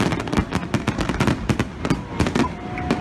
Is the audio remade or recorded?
recorded